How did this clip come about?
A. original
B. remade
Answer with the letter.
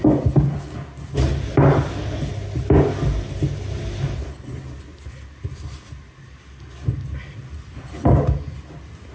A